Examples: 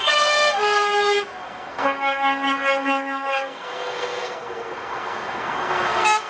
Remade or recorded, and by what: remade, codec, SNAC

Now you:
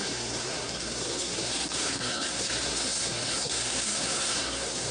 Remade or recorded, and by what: remade, codec, SNAC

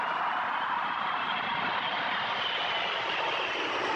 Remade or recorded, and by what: recorded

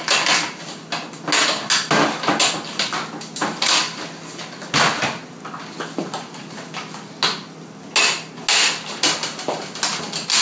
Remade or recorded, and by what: recorded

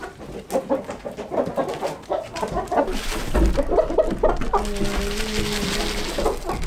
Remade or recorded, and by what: recorded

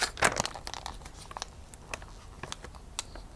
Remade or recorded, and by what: recorded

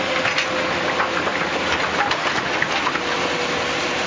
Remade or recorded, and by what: recorded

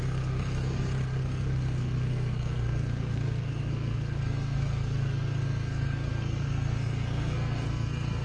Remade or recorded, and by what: remade, codec, SNAC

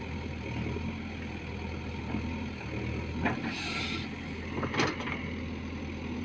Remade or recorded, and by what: recorded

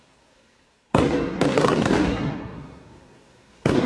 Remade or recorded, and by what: remade, codec, SNAC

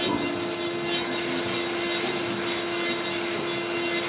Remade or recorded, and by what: recorded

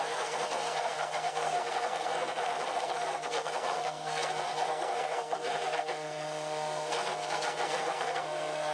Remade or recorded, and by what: remade, codec, SNAC